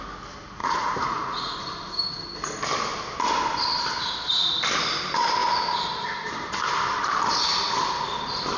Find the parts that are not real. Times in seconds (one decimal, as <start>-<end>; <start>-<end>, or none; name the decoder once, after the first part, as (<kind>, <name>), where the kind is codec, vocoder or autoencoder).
0.6-1.6 (vocoder, Vocos)

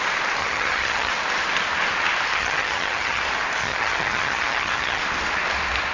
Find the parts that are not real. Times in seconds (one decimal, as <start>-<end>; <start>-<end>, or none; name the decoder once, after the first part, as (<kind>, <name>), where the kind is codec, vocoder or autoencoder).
0.4-1.1 (vocoder, HiFi-GAN); 2.3-3.2; 3.6-5.0

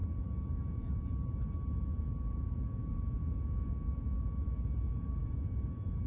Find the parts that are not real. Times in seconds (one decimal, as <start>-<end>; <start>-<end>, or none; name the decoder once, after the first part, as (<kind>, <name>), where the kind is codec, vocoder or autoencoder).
0.0-6.1 (vocoder, Vocos)

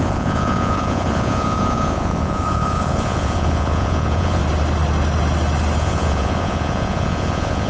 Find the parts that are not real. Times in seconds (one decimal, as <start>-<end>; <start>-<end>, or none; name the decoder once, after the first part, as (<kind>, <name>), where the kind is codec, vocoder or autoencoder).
0.0-4.4 (vocoder, Vocos); 5.8-7.7

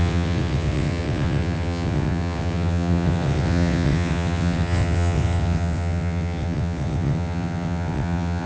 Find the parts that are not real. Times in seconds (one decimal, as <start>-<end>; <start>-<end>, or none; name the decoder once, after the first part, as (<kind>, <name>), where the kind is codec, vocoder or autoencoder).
0.0-8.5 (vocoder, WaveNeXt)

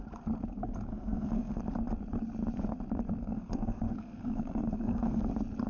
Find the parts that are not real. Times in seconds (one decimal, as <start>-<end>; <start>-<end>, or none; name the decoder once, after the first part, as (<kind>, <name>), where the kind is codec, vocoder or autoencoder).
0.9-1.6 (codec, SNAC); 3.2-5.2

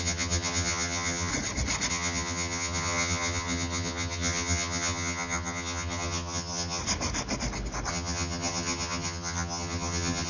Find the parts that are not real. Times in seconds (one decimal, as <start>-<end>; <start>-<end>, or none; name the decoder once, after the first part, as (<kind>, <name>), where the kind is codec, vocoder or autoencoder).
0.0-1.3 (vocoder, HiFi-GAN); 1.9-6.8; 7.9-10.3